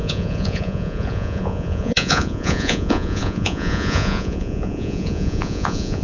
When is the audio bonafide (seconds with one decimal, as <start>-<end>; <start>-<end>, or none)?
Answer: none